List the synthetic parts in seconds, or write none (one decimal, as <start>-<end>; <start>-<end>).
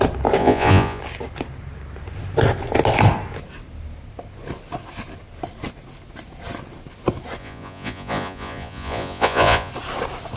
0.4-1.0; 7.4-9.7